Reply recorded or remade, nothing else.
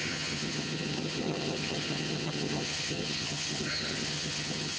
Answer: remade